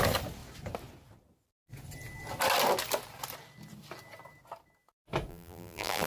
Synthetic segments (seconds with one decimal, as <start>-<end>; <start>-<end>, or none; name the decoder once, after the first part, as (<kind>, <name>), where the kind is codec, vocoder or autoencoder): 5.3-6.1 (vocoder, BigVGAN v2)